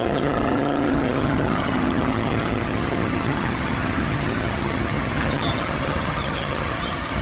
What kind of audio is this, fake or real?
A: fake